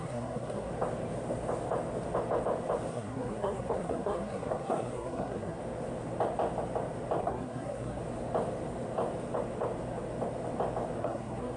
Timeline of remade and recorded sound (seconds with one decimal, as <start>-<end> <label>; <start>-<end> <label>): 0.0-0.7 remade; 0.7-2.9 recorded; 2.9-5.6 remade; 5.6-7.2 recorded; 7.2-8.0 remade; 8.0-11.0 recorded; 11.0-11.6 remade